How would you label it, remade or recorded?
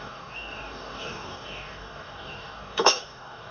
remade